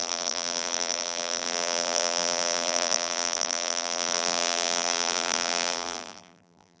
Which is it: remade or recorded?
remade